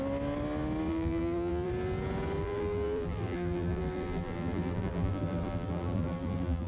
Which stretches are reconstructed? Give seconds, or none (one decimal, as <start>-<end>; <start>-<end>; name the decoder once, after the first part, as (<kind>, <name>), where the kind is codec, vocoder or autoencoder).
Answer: 0.9-1.7 (vocoder, BigVGAN v2); 2.4-6.7